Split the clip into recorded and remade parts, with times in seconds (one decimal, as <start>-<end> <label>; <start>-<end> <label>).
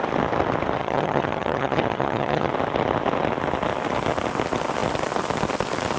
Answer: 0.0-0.8 recorded; 0.8-2.5 remade; 2.5-6.0 recorded